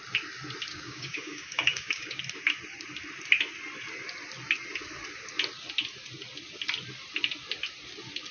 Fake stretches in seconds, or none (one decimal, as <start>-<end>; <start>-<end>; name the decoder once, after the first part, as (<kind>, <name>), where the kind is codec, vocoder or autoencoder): 0.7-2.2 (codec, DAC)